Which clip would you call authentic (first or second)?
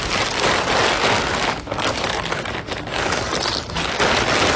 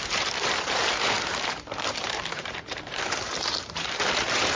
first